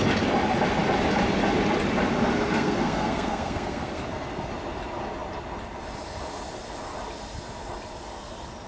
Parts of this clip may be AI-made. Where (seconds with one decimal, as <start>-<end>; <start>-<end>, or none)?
2.5-4.0